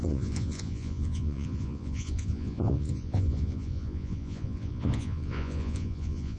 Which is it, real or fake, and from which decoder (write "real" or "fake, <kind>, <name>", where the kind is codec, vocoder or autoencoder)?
fake, vocoder, Vocos